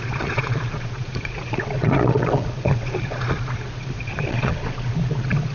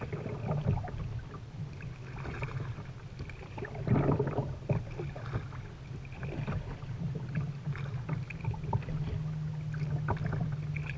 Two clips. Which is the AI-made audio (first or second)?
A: first